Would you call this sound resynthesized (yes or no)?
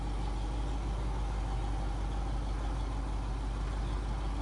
no